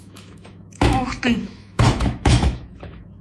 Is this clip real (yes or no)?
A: no